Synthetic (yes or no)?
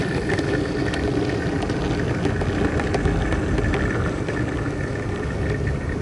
no